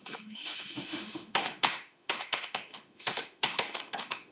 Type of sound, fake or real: fake